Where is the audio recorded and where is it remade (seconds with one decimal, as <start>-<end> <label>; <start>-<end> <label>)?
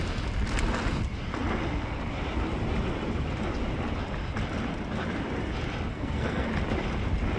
0.0-5.9 recorded; 5.9-6.5 remade; 6.5-7.4 recorded